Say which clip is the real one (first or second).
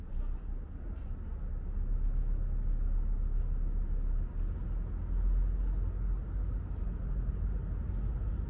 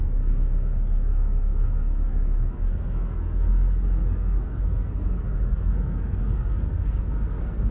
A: first